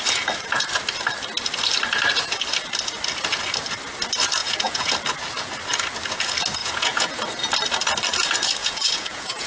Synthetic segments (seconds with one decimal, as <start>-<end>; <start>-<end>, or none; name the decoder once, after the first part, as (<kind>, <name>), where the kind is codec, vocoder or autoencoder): 4.4-4.9 (vocoder, Vocos); 6.6-7.2; 8.6-9.5

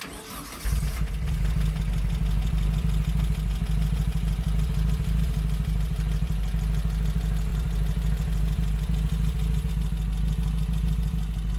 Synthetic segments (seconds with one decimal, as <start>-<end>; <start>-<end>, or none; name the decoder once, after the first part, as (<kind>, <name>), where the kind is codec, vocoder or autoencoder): none

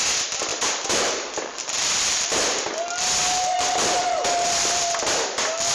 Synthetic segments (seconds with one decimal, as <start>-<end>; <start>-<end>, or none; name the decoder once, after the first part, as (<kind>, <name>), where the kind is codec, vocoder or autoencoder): 0.5-1.0 (vocoder, BigVGAN v2); 1.8-2.7; 4.0-4.8

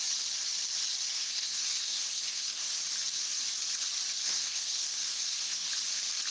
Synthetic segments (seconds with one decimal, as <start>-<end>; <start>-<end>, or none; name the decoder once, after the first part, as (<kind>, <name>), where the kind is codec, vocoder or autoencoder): 1.1-2.8 (codec, SNAC); 4.2-5.7

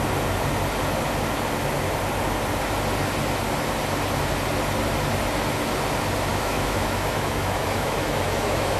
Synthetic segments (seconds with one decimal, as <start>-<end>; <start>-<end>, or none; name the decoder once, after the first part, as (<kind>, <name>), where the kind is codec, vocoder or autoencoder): 6.3-8.8 (autoencoder, DAC-VAE)

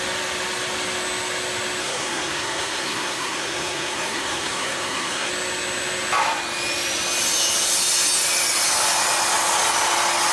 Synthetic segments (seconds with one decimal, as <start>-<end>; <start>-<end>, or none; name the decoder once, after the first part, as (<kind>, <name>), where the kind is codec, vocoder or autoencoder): 1.8-5.3 (codec, SNAC)

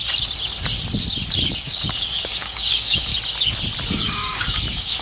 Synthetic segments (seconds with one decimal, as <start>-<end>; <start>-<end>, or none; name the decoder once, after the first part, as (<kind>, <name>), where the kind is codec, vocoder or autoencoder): 1.5-3.1 (codec, DAC); 3.9-5.0